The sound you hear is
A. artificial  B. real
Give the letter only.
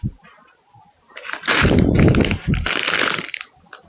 B